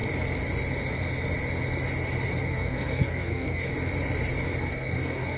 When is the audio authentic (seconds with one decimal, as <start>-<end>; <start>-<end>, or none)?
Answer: 0.0-2.4; 3.7-4.6